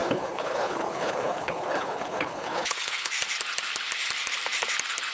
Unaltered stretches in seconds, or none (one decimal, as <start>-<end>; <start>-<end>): 3.1-5.1